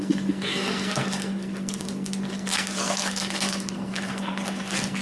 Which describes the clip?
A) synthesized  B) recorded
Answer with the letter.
A